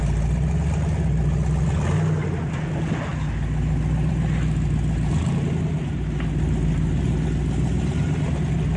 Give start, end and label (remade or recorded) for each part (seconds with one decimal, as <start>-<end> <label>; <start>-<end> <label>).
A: 0.0-8.8 recorded